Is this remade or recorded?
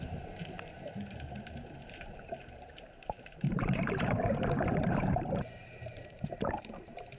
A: remade